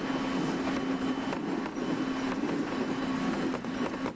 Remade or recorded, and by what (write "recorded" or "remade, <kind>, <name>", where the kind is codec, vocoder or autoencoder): recorded